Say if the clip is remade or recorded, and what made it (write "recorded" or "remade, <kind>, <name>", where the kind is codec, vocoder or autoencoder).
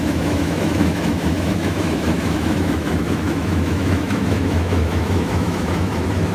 remade, autoencoder, DAC-VAE